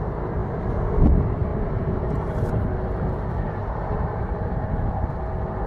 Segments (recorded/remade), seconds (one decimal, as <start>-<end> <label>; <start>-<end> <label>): 0.0-1.5 recorded; 1.5-2.6 remade; 2.6-3.6 recorded; 3.6-5.1 remade; 5.1-5.7 recorded